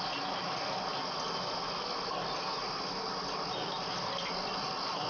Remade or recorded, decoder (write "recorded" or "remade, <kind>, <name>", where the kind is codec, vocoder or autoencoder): recorded